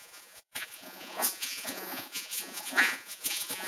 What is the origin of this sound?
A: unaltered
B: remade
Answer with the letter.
B